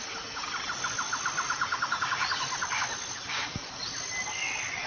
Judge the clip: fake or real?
real